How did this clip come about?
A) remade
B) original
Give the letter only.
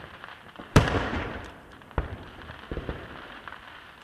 A